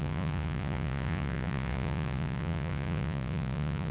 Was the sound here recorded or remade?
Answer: remade